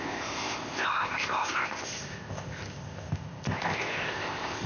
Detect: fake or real fake